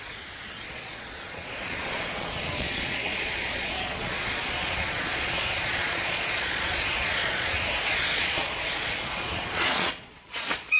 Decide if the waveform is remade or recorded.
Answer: remade